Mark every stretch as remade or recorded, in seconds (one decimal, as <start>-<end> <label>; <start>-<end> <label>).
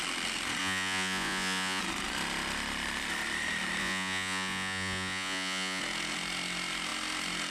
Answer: 0.0-0.6 recorded; 0.6-1.8 remade; 1.8-3.8 recorded; 3.8-5.8 remade; 5.8-7.5 recorded